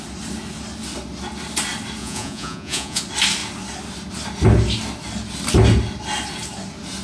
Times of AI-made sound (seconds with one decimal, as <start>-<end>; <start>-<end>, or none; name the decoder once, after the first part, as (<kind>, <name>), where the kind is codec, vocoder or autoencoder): 2.0-3.0 (vocoder, Vocos)